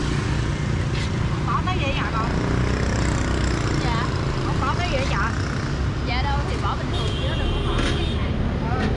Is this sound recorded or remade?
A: recorded